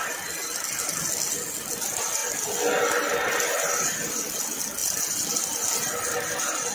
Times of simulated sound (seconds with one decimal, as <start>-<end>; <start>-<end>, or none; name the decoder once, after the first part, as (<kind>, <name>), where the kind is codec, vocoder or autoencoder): none